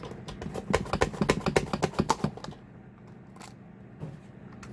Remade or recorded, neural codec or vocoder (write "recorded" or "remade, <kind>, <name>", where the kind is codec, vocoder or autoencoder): recorded